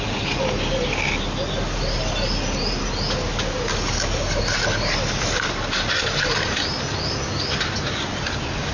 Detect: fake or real real